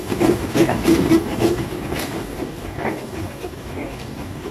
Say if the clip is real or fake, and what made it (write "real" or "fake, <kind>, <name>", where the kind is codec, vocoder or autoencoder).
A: fake, codec, DAC